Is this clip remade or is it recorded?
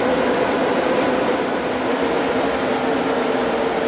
recorded